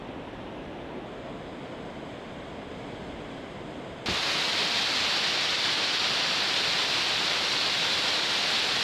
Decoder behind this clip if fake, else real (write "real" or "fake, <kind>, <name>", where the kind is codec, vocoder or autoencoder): real